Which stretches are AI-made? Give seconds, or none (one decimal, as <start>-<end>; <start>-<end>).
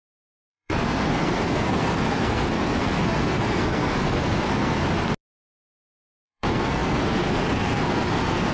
0.0-4.8; 5.9-8.5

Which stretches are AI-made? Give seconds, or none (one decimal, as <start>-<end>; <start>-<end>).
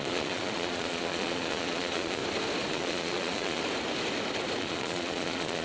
0.0-2.2; 2.7-3.6; 4.6-5.6